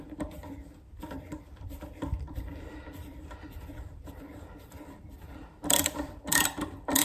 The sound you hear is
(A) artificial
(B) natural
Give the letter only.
A